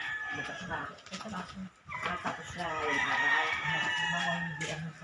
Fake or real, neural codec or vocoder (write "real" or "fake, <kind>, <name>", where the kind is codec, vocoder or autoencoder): real